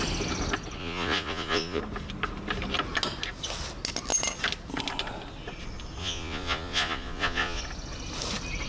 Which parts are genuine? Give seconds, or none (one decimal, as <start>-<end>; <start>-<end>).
0.0-0.8; 1.8-6.0; 7.6-8.7